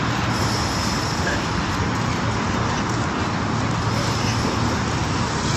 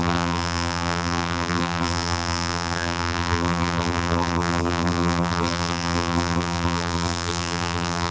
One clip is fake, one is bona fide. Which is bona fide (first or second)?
first